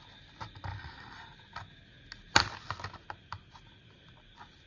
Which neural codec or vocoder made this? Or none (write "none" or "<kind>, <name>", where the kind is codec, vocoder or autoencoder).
none